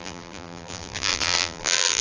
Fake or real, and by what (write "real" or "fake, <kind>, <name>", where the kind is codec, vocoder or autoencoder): fake, vocoder, BigVGAN v2